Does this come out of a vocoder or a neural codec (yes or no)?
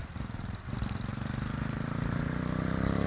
yes